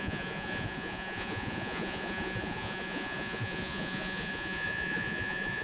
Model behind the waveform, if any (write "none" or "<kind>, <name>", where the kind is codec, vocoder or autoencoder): vocoder, Vocos